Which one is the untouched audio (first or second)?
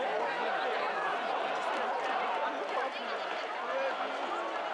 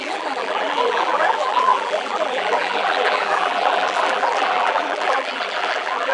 first